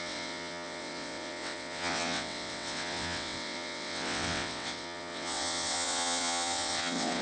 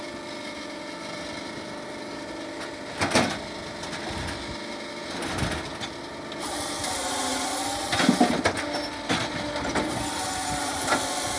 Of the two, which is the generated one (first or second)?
first